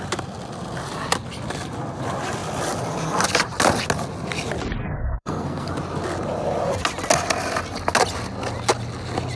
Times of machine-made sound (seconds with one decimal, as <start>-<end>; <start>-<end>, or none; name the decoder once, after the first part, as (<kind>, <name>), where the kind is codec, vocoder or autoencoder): 4.8-5.7 (codec, SNAC)